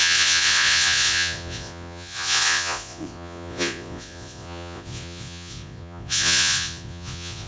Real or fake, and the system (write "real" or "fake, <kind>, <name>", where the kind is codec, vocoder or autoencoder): fake, vocoder, Vocos